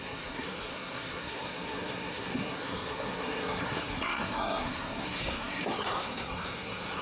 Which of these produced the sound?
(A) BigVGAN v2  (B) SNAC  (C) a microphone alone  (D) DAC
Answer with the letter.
B